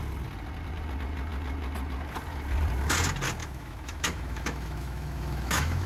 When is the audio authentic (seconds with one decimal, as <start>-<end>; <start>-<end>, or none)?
0.0-3.4